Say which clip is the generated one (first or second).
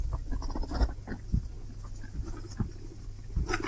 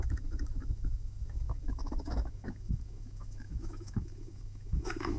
second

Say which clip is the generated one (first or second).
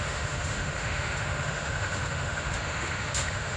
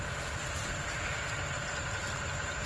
first